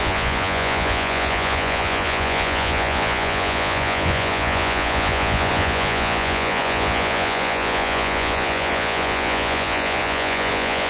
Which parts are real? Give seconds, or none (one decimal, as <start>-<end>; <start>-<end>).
none